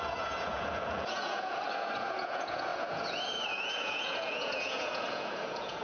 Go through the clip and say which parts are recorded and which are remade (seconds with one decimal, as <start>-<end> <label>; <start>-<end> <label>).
0.0-5.8 remade